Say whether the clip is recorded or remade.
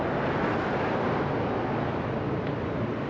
recorded